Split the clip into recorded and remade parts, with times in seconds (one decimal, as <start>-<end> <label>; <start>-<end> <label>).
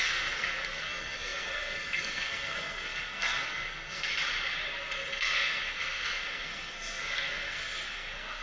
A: 0.0-4.1 remade; 4.1-5.1 recorded; 5.1-8.4 remade